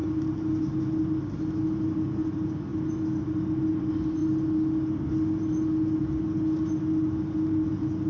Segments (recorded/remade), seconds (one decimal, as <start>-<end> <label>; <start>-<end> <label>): 0.0-8.1 recorded